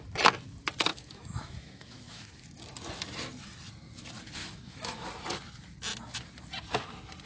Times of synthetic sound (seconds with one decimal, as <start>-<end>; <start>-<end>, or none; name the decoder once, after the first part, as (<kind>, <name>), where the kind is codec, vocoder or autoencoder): 0.9-2.4 (autoencoder, DAC-VAE); 4.4-5.1

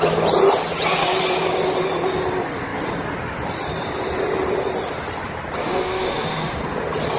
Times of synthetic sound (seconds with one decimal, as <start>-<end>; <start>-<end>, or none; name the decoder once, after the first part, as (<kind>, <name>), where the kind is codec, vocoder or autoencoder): 5.6-6.6 (autoencoder, DAC-VAE)

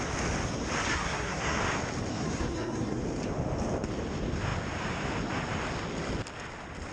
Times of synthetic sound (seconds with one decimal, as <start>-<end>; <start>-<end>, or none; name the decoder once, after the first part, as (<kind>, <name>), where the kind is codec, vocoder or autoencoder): 0.9-1.6 (codec, SNAC); 2.1-3.0

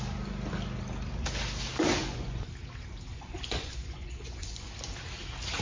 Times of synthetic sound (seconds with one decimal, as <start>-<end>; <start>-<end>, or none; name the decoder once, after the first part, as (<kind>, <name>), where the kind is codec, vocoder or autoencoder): 2.0-2.5 (vocoder, Vocos); 3.1-4.7

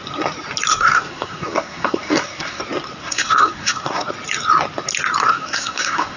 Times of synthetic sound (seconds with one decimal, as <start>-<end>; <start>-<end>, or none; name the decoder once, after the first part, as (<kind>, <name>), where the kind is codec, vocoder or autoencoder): 0.7-2.6 (codec, SNAC); 3.0-4.1; 5.2-6.2

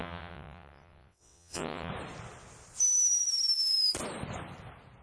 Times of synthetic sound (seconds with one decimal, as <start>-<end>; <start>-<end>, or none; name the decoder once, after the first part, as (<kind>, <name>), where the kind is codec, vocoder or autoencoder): 0.0-1.9 (vocoder, WaveNeXt)